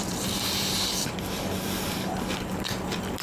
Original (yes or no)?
no